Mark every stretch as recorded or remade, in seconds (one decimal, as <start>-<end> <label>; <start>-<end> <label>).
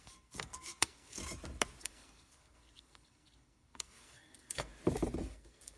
0.0-1.2 remade; 1.2-1.8 recorded; 1.8-4.7 remade; 4.7-5.2 recorded; 5.2-5.8 remade